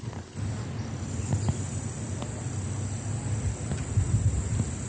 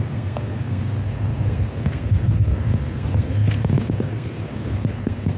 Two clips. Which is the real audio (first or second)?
first